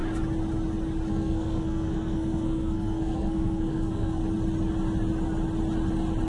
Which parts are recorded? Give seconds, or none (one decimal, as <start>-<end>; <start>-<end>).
0.0-1.1; 4.2-6.3